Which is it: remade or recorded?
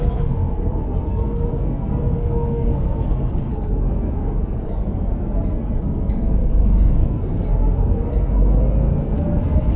remade